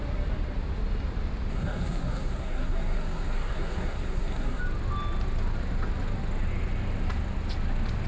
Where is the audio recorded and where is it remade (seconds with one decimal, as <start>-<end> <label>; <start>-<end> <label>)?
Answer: 0.0-1.5 recorded; 1.5-4.6 remade; 4.6-8.1 recorded

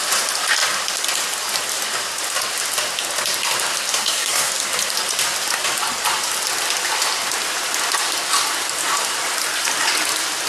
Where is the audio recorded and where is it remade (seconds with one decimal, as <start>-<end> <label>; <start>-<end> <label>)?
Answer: 0.0-3.9 recorded; 3.9-4.5 remade; 4.5-10.5 recorded

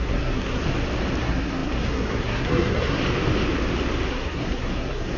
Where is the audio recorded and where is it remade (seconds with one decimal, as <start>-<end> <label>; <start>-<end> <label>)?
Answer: 0.0-0.6 remade; 0.6-1.2 recorded; 1.2-3.0 remade; 3.0-4.1 recorded; 4.1-5.2 remade

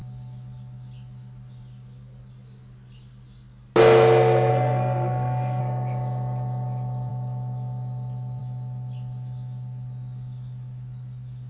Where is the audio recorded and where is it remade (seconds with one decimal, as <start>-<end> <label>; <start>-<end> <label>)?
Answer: 0.0-4.5 recorded; 4.5-5.6 remade; 5.6-11.5 recorded

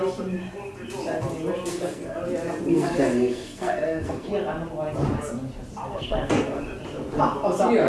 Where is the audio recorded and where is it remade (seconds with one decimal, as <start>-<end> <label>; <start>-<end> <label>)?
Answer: 0.0-1.7 recorded; 1.7-2.2 remade; 2.2-2.7 recorded; 2.7-4.3 remade; 4.3-5.9 recorded; 5.9-6.6 remade; 6.6-7.9 recorded